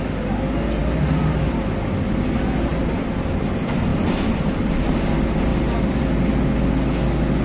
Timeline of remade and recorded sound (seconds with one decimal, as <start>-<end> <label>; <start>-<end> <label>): 0.0-2.7 recorded; 2.7-3.4 remade; 3.4-3.9 recorded; 3.9-4.8 remade; 4.8-5.5 recorded; 5.5-6.0 remade; 6.0-7.4 recorded